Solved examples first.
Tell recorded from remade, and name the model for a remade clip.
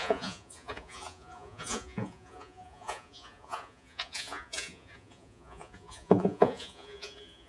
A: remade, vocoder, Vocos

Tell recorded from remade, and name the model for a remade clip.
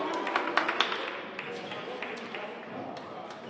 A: recorded